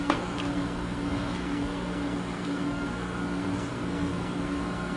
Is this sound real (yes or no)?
no